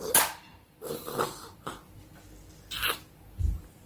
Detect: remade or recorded recorded